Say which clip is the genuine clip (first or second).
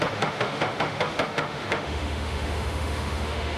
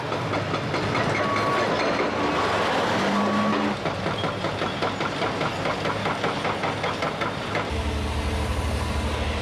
second